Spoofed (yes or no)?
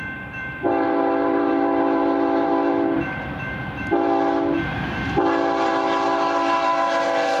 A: yes